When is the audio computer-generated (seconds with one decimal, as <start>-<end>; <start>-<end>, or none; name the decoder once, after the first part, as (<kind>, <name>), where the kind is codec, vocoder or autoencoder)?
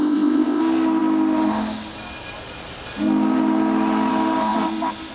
0.0-0.6 (codec, ZipCodec)